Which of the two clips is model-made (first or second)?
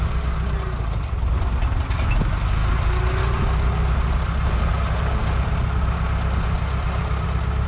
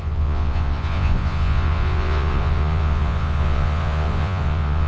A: second